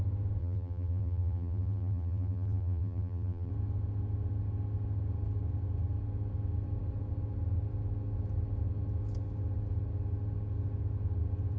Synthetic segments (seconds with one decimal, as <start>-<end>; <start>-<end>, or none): 0.4-3.5

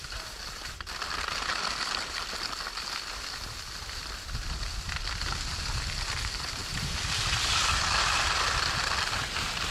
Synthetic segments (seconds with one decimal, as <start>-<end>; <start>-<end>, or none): none

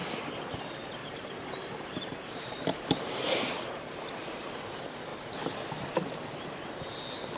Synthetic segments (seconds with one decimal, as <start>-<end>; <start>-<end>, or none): 1.0-4.5; 5.1-6.3

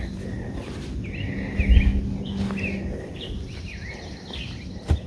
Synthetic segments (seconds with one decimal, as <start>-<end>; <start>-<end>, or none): none

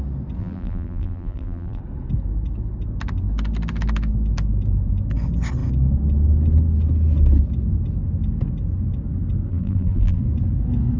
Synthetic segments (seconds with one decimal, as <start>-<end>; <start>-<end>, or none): 0.4-1.8; 9.5-10.2

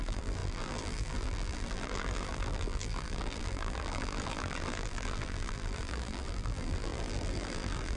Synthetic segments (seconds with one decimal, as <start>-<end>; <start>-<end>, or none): 0.0-8.0